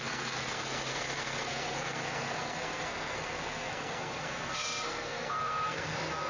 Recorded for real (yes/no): no